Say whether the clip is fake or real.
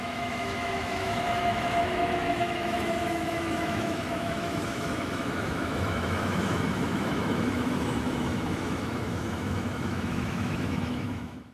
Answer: fake